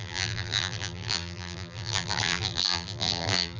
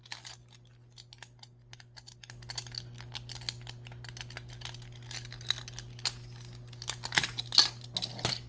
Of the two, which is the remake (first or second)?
first